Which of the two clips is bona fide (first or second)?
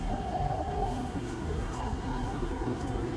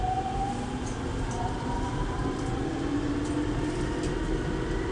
second